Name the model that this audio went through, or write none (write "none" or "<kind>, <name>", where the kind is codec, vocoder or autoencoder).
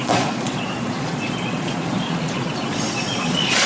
vocoder, Vocos